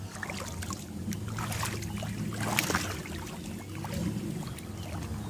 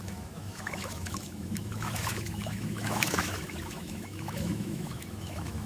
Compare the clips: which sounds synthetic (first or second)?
second